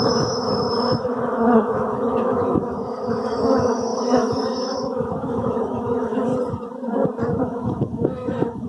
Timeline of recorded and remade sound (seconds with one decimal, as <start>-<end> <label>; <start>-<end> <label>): 0.0-6.3 remade; 6.3-7.4 recorded; 7.4-8.7 remade